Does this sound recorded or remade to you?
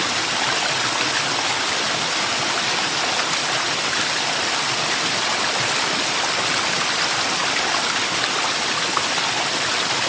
recorded